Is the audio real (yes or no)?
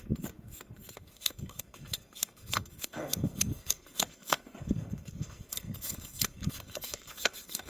no